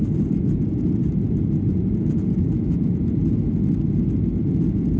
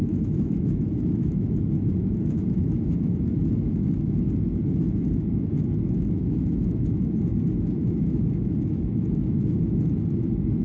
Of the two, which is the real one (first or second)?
first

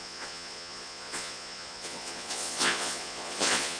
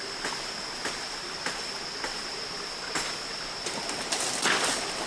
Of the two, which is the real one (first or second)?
second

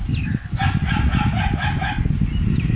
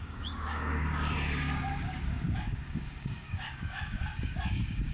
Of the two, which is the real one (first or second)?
first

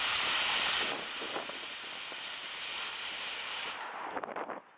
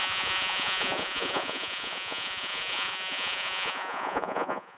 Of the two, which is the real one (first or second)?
first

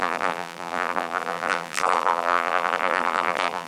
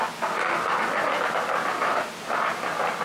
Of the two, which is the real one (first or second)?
second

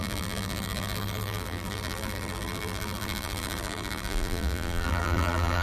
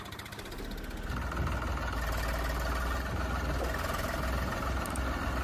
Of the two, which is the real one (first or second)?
second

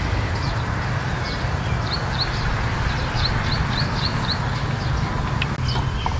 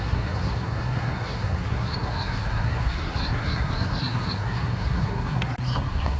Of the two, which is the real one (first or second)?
first